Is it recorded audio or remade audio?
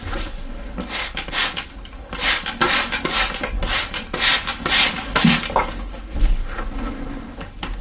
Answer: recorded